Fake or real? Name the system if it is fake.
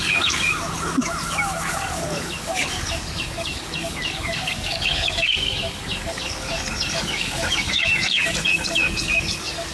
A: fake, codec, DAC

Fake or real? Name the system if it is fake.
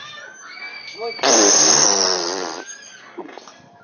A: real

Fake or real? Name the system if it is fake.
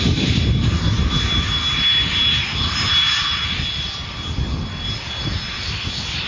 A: real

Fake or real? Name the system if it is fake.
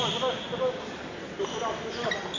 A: real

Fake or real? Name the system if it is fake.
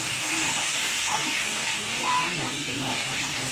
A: fake, codec, DAC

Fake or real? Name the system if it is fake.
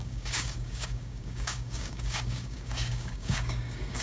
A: fake, codec, DAC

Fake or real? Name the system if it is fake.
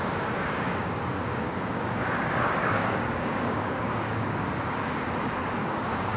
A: fake, codec, DAC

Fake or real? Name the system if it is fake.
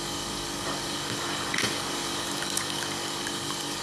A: fake, codec, DAC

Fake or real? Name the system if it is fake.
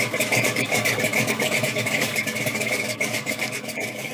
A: fake, codec, DAC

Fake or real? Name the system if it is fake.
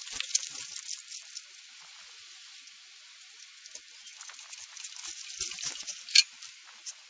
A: real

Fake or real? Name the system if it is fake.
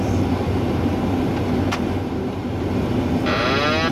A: real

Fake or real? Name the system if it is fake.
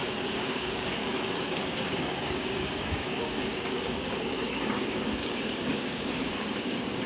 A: fake, codec, DAC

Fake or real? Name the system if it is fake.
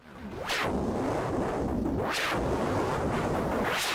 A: real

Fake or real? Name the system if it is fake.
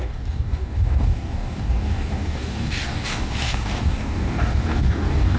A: fake, codec, DAC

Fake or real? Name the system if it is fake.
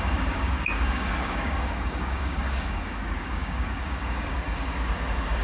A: fake, codec, DAC